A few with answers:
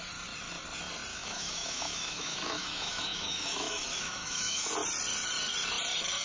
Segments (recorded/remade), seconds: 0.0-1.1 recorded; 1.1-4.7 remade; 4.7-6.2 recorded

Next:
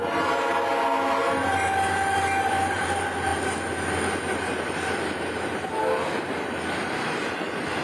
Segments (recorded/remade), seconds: 0.0-7.8 recorded